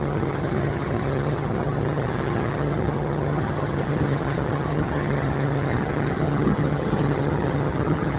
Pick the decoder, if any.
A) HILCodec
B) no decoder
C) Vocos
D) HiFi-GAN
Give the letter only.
D